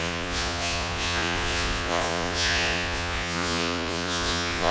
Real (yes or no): no